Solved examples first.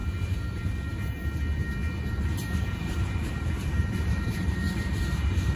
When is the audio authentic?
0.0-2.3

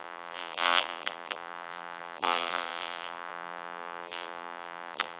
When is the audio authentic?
none

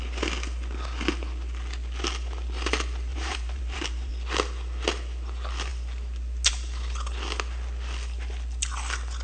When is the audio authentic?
0.0-3.1; 4.1-9.2

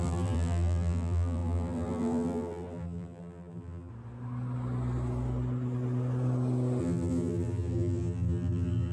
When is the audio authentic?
3.9-6.8

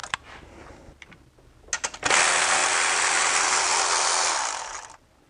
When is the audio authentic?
0.8-2.6; 3.3-5.3

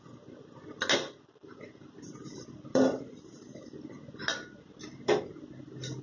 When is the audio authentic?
0.0-1.4; 3.7-6.0

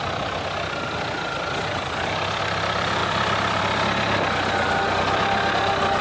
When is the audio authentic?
0.0-1.7; 2.4-3.0; 3.6-6.0